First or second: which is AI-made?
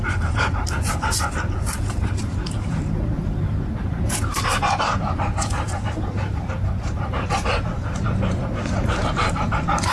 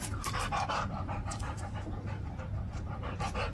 first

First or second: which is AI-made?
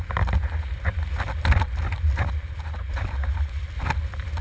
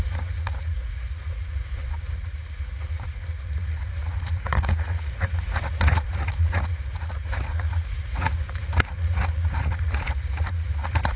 second